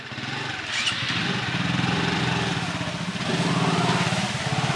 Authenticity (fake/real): fake